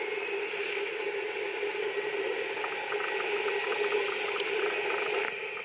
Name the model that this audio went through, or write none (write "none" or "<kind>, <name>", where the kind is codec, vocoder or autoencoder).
none